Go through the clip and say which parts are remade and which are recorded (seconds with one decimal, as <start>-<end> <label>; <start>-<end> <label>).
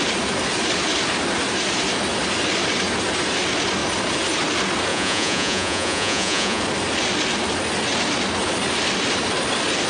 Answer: 0.0-4.9 recorded; 4.9-6.6 remade; 6.6-9.9 recorded